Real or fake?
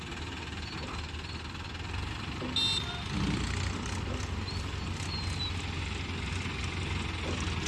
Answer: real